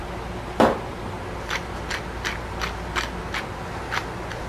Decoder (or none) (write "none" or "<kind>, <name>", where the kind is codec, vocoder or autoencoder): none